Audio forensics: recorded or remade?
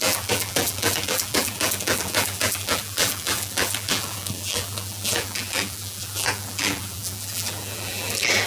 remade